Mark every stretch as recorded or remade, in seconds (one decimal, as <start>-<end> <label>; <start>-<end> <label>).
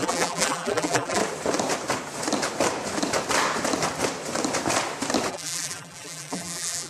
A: 0.0-1.2 remade; 1.2-5.3 recorded; 5.3-6.9 remade